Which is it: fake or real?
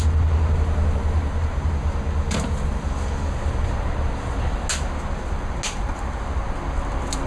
real